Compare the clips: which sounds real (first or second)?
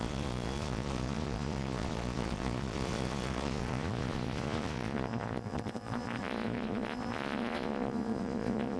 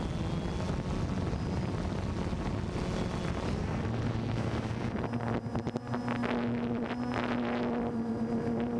second